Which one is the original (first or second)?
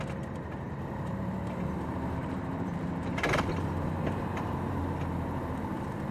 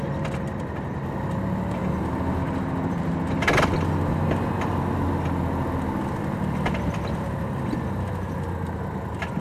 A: second